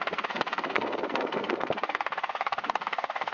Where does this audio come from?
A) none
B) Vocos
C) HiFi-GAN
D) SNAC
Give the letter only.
D